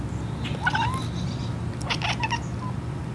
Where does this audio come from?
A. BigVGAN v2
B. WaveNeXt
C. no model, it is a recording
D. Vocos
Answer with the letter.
C